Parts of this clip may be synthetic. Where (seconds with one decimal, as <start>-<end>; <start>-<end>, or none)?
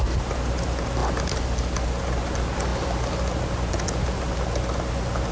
none